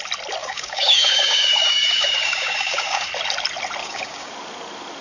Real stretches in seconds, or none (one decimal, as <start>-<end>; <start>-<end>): 0.0-0.4; 3.1-3.8; 4.3-5.0